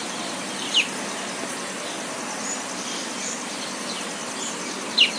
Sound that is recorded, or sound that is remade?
recorded